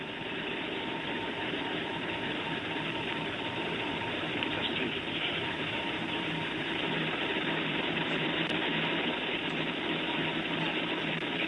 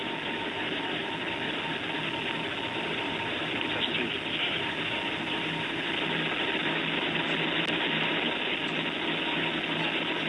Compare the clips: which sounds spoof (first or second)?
first